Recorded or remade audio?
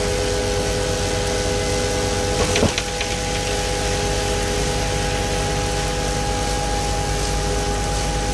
recorded